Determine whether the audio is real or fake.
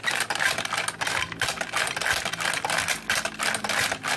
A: real